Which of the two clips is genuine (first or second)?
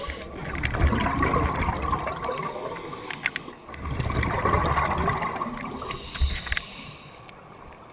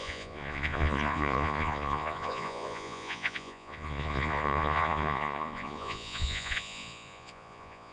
first